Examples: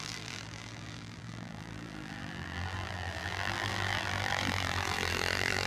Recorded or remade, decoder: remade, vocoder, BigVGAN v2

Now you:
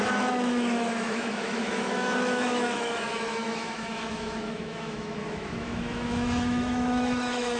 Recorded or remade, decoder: remade, autoencoder, DAC-VAE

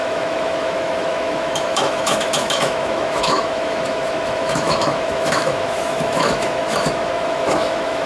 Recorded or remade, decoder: remade, autoencoder, DAC-VAE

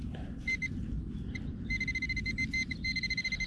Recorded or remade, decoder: recorded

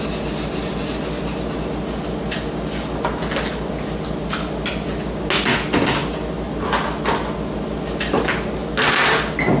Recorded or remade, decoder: recorded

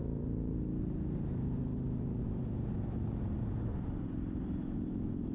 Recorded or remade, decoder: remade, vocoder, BigVGAN v2